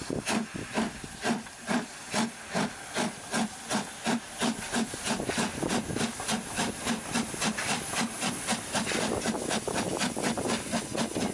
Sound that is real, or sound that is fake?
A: real